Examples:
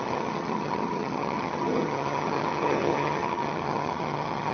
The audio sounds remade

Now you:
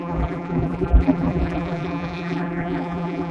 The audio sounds remade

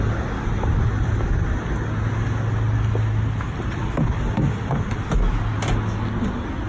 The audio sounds recorded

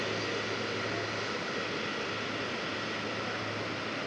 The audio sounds recorded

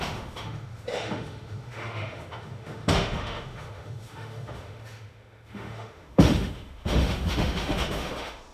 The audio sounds remade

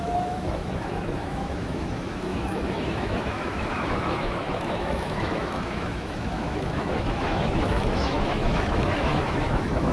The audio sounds remade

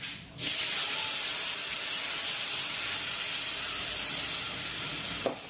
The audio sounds recorded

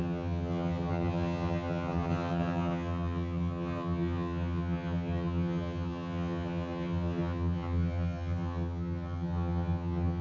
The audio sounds remade